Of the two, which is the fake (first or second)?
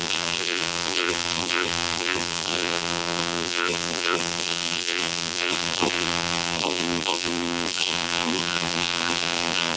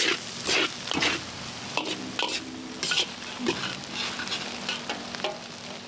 first